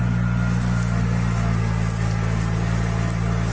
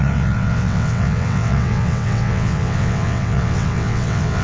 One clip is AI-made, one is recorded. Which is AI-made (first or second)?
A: second